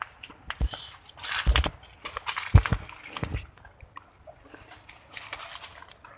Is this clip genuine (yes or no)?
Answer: yes